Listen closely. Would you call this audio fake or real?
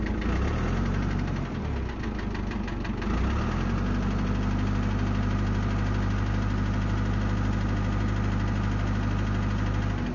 real